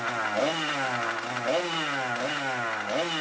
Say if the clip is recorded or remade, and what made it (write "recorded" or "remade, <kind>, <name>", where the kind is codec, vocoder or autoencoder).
recorded